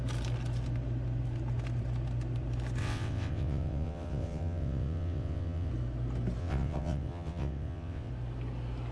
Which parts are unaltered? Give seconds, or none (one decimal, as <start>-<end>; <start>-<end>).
0.0-2.8; 5.7-6.4; 8.1-8.9